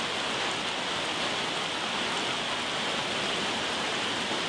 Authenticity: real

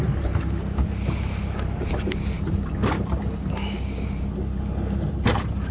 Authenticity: real